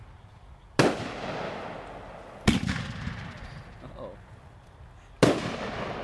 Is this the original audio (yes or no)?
yes